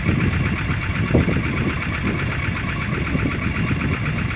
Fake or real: real